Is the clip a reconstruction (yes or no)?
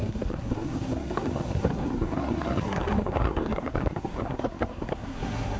yes